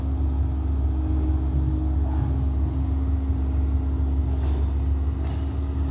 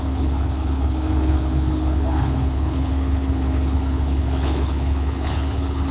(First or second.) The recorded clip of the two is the first